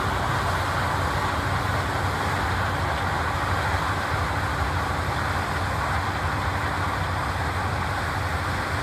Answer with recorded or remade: recorded